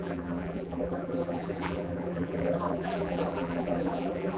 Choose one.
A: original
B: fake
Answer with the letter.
B